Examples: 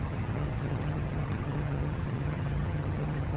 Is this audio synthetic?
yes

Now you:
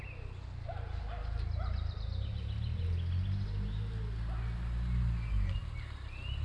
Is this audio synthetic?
no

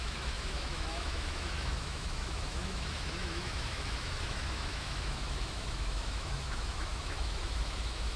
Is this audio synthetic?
yes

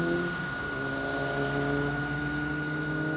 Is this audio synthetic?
no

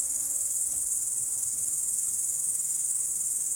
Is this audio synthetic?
yes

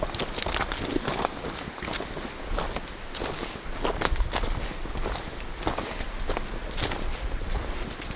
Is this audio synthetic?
no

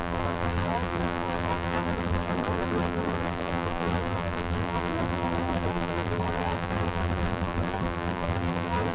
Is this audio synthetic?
yes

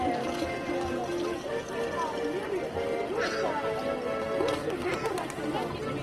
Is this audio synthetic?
no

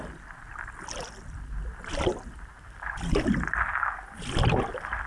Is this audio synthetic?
no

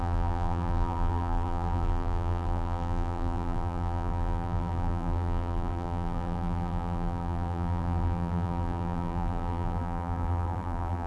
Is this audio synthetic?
yes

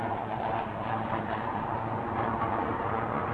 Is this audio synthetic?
yes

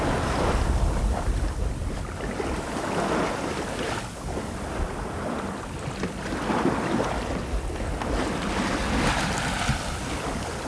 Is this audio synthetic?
no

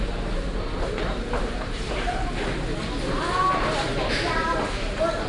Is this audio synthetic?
no